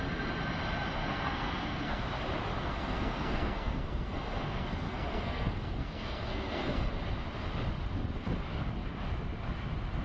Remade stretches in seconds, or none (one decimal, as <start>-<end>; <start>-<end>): 1.0-2.0; 2.5-6.9